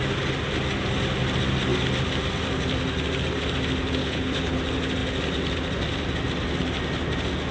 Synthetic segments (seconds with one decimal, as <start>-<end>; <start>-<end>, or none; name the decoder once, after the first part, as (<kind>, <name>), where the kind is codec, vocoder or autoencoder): 4.0-4.6 (codec, HILCodec)

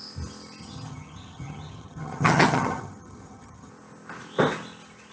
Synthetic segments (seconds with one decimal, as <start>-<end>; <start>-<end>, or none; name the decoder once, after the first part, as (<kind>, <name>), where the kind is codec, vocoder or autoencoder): 0.6-3.7 (vocoder, HiFi-GAN)

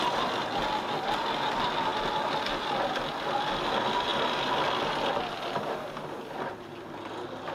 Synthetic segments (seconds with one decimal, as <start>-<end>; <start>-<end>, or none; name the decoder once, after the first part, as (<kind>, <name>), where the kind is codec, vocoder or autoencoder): none

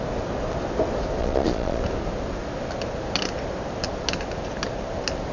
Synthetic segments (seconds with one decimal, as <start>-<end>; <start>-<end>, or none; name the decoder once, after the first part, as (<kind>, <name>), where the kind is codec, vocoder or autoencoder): 1.2-1.8 (vocoder, Vocos)

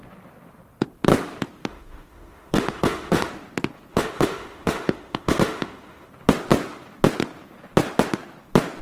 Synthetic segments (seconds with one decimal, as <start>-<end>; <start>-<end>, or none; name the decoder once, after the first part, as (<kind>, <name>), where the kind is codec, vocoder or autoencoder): 1.7-3.3 (autoencoder, DAC-VAE); 3.9-6.1

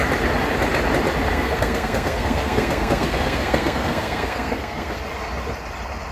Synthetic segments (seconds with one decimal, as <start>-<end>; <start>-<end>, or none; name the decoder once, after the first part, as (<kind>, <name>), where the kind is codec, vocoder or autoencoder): 1.3-5.0 (codec, SNAC)

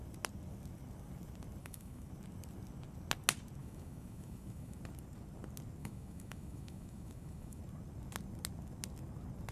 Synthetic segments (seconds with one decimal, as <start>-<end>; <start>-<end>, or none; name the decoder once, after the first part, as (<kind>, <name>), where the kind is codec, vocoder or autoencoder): 1.6-2.1 (autoencoder, DAC-VAE); 3.6-4.8; 5.8-7.6